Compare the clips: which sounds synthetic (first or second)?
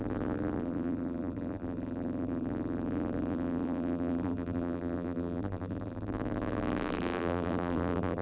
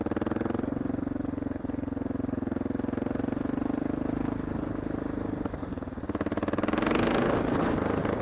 first